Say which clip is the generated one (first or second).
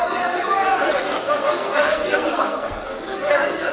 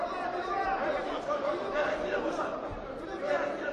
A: first